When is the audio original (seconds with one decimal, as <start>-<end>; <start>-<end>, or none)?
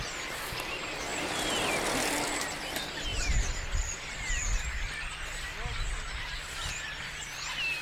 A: 0.0-1.1; 1.7-7.8